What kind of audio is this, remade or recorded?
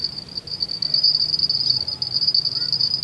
recorded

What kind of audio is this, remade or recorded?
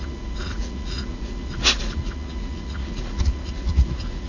remade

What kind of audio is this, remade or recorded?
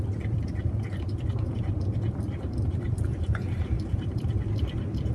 recorded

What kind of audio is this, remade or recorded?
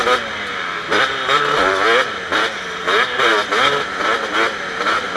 recorded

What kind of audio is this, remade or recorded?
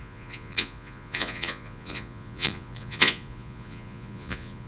remade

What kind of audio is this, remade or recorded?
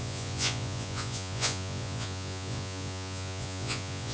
remade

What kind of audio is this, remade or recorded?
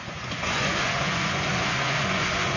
remade